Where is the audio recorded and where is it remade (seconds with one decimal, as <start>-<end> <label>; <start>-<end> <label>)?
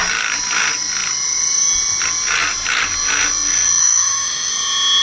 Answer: 0.0-3.8 recorded; 3.8-4.5 remade; 4.5-5.0 recorded